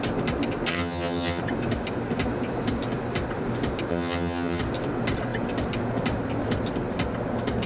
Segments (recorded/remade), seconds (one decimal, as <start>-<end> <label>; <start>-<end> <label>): 0.0-0.7 recorded; 0.7-1.4 remade; 1.4-3.9 recorded; 3.9-4.6 remade; 4.6-7.7 recorded